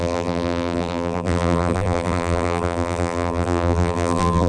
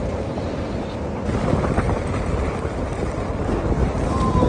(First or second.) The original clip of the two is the second